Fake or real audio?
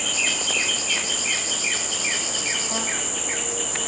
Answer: real